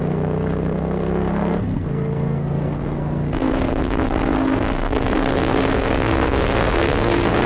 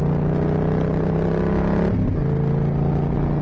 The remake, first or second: first